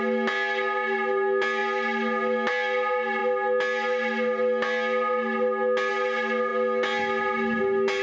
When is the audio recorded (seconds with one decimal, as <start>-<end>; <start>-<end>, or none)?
0.0-8.0